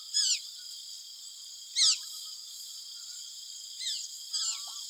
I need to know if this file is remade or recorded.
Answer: recorded